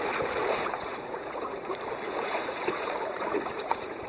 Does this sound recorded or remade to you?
remade